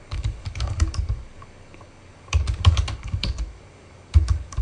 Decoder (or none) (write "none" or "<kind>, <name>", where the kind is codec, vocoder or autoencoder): codec, DAC